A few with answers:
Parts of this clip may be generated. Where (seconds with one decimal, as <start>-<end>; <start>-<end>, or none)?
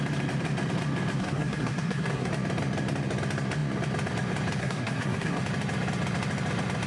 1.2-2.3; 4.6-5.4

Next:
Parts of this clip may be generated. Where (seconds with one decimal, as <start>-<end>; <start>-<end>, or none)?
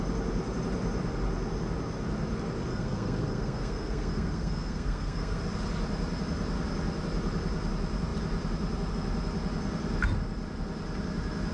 2.7-5.4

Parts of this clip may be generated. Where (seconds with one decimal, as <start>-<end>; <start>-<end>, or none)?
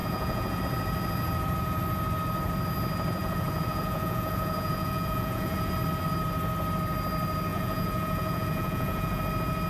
0.0-0.6; 3.2-5.7; 7.5-9.2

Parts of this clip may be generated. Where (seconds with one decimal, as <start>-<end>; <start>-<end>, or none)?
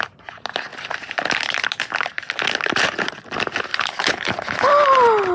3.7-4.7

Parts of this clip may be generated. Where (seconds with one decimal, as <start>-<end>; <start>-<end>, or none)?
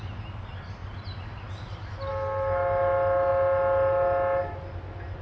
none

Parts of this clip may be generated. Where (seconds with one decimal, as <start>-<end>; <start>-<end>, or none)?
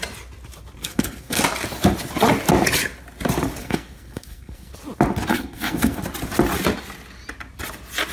0.8-1.4; 3.6-4.7; 5.3-6.0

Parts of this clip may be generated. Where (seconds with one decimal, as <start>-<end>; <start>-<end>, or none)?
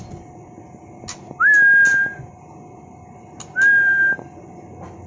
none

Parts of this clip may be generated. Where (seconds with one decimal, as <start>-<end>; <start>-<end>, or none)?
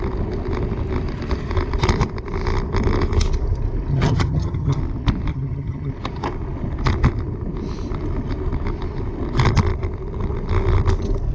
3.9-4.8; 5.3-5.9